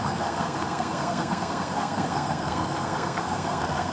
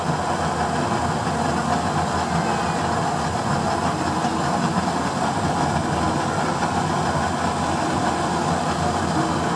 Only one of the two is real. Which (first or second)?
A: second